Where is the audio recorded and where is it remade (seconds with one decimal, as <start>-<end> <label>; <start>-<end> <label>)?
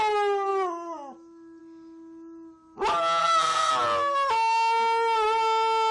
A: 0.0-3.2 recorded; 3.2-3.7 remade; 3.7-5.9 recorded